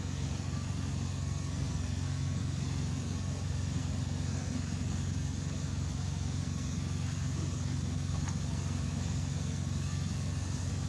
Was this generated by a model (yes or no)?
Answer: yes